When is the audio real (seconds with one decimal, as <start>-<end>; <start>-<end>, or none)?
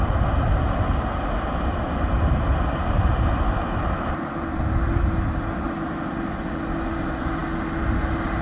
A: 0.0-8.4